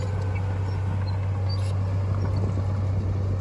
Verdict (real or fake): real